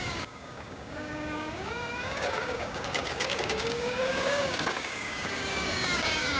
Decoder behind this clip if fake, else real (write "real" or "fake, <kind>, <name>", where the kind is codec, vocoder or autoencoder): fake, codec, DAC